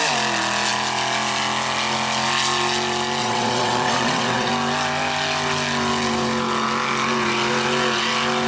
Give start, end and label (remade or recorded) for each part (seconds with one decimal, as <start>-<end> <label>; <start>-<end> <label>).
0.0-3.2 recorded; 3.2-4.5 remade; 4.5-8.5 recorded

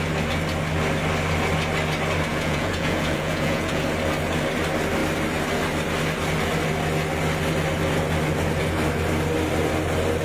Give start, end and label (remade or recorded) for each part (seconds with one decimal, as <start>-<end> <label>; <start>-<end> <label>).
0.0-2.3 recorded; 2.3-3.8 remade; 3.8-10.2 recorded

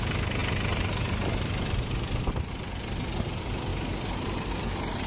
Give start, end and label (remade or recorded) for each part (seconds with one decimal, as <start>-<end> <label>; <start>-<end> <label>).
0.0-5.1 recorded

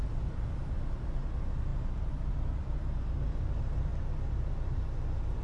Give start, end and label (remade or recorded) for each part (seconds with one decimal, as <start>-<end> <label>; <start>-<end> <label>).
0.0-3.9 remade; 3.9-5.4 recorded

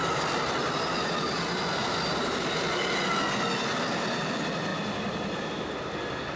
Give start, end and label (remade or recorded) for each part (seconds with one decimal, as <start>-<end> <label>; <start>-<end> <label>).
0.0-6.4 recorded

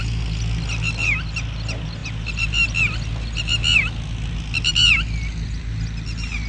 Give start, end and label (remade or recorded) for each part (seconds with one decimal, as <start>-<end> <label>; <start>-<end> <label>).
0.0-6.5 recorded

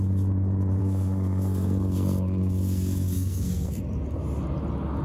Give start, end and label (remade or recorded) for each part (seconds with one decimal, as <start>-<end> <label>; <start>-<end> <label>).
0.0-0.8 recorded; 0.8-3.8 remade; 3.8-5.0 recorded

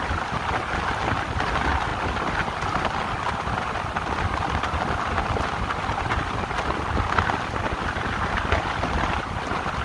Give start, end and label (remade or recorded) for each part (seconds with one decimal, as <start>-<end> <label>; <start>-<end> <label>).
0.0-9.8 recorded